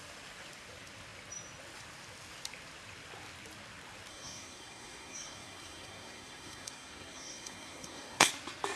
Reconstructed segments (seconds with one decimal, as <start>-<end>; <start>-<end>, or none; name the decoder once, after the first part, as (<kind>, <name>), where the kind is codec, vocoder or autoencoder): 4.1-8.3 (codec, SNAC)